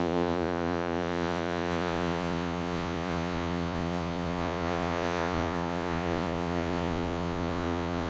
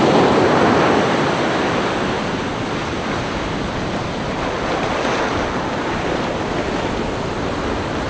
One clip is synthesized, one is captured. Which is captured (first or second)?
second